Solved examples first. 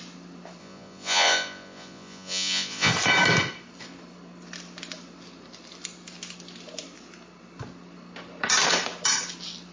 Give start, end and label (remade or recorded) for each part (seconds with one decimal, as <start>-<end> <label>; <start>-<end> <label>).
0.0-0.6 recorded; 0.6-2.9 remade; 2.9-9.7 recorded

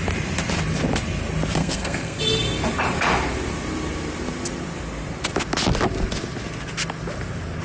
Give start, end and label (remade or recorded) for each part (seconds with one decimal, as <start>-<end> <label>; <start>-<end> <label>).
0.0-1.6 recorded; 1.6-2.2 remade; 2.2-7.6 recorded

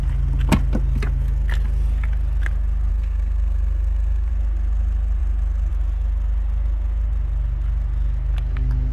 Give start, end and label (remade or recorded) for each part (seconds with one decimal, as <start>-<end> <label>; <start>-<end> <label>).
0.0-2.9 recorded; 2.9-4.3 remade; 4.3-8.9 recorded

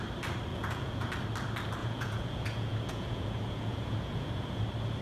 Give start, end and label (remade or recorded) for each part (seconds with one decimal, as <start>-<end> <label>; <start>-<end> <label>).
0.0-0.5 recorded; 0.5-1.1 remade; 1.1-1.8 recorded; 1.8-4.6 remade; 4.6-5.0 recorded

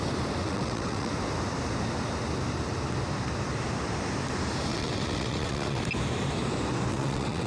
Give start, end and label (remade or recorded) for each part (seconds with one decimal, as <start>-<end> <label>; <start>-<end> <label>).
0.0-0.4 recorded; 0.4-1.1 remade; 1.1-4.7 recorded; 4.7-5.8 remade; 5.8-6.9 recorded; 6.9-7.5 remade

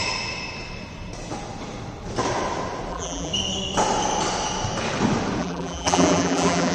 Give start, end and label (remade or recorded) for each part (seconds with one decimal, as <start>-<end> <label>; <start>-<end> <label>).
0.0-2.9 recorded; 2.9-3.3 remade; 3.3-5.4 recorded; 5.4-6.7 remade